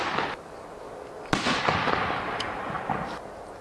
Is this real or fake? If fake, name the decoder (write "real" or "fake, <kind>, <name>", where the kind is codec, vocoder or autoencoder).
real